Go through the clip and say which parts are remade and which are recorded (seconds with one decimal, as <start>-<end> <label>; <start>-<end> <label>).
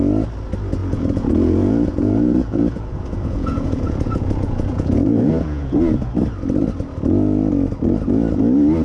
0.0-0.8 recorded; 0.8-6.1 remade; 6.1-8.8 recorded